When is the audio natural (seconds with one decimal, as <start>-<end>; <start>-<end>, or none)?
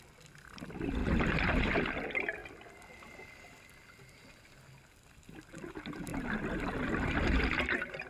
0.0-1.0; 1.8-6.1; 6.9-8.1